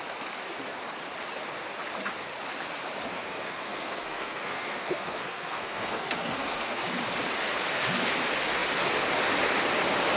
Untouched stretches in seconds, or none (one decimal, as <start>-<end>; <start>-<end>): 0.0-3.1; 6.8-10.2